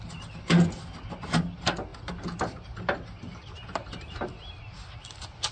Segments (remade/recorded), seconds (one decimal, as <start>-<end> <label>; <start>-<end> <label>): 0.0-5.5 recorded